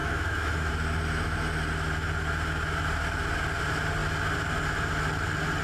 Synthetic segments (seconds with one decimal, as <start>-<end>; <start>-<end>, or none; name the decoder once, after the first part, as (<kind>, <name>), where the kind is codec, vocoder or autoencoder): 0.0-0.7 (autoencoder, DAC-VAE)